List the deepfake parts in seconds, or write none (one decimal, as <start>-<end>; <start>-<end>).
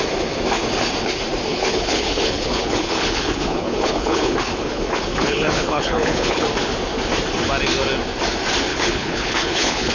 1.5-6.4; 8.7-9.9